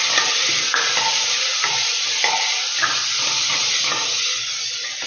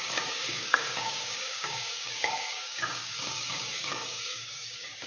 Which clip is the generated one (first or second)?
second